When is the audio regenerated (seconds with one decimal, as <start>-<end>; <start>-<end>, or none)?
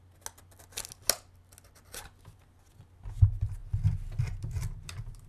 none